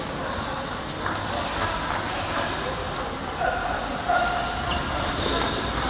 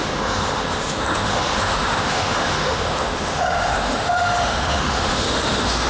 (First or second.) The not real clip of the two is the second